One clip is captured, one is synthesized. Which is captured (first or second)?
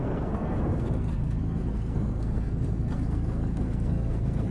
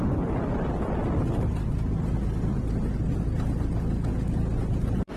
second